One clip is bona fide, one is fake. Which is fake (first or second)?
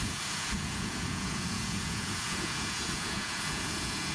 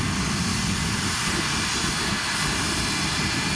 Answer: first